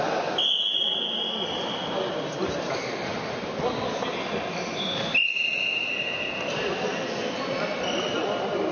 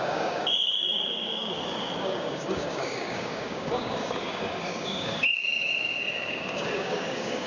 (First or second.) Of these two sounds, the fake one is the second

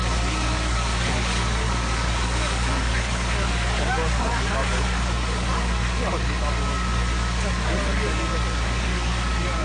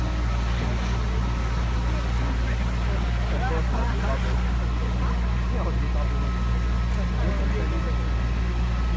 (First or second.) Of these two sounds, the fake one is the first